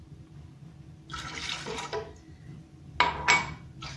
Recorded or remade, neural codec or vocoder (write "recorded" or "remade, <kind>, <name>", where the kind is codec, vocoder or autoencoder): recorded